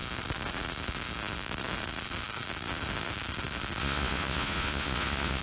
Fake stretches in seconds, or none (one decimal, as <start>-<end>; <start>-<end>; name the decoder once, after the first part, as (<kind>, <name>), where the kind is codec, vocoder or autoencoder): 3.8-5.4 (vocoder, Vocos)